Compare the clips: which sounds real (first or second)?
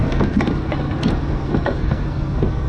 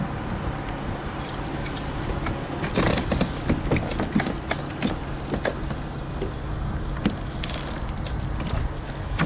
second